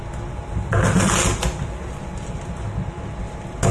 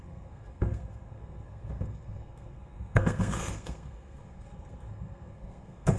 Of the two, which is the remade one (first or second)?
second